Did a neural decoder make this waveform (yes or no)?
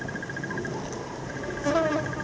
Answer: no